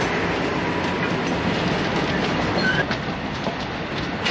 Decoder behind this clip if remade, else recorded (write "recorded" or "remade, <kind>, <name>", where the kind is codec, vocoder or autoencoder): recorded